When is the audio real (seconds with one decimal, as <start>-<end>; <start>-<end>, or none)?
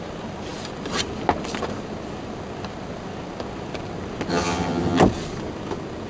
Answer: 0.0-4.3; 5.0-6.1